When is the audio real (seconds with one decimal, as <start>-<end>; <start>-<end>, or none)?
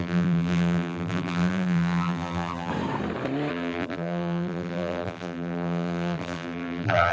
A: 2.7-3.5